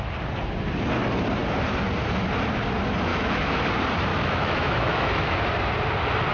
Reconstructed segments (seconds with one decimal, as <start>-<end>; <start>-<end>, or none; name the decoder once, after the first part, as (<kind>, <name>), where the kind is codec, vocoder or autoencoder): 3.1-3.6 (autoencoder, DAC-VAE); 4.1-5.4